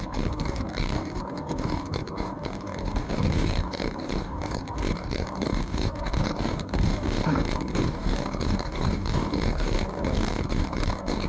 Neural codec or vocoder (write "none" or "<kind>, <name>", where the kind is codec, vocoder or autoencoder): codec, DAC